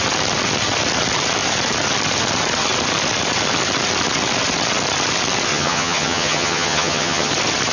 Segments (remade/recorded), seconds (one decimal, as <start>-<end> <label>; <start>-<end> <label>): 0.0-5.5 recorded; 5.5-7.3 remade; 7.3-7.7 recorded